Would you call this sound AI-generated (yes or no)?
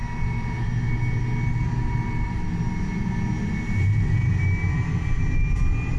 no